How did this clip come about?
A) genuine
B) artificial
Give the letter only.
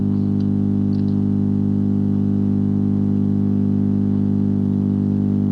A